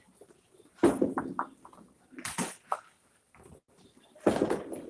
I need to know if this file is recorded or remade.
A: recorded